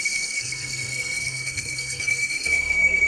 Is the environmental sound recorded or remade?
remade